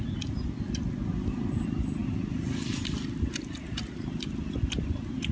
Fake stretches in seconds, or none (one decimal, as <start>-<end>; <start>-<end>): none